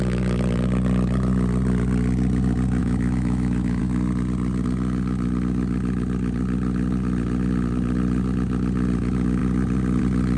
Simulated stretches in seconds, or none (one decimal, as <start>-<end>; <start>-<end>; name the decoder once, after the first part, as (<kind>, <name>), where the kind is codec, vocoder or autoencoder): 2.8-3.8 (autoencoder, DAC-VAE)